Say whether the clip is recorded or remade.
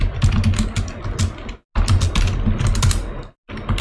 recorded